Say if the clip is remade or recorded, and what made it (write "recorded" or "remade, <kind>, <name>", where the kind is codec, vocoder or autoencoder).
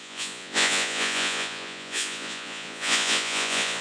remade, vocoder, Vocos